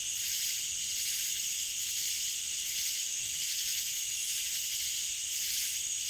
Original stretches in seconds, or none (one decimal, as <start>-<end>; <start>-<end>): 0.0-2.6; 4.3-6.1

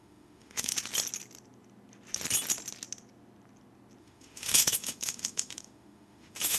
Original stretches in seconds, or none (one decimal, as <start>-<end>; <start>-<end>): 0.7-4.0